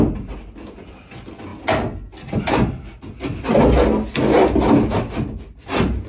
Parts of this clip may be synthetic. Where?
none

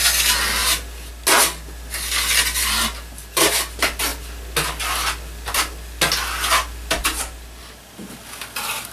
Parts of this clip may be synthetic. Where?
none

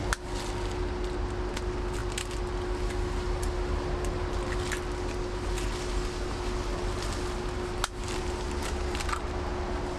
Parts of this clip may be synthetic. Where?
none

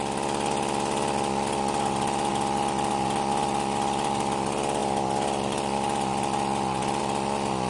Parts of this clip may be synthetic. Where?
none